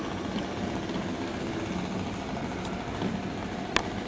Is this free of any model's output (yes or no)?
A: yes